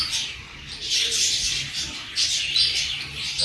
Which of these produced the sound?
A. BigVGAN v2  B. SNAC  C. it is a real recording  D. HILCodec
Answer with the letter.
C